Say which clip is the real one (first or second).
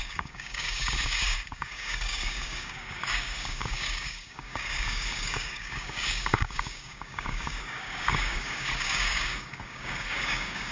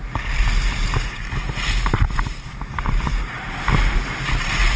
second